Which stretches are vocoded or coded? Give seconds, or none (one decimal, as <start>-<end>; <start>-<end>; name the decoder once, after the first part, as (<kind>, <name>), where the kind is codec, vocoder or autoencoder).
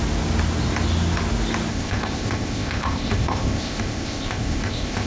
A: 1.7-5.1 (codec, ZipCodec)